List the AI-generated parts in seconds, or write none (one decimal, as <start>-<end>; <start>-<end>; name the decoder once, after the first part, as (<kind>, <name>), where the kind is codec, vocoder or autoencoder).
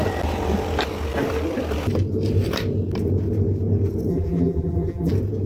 4.1-5.1 (vocoder, BigVGAN v2)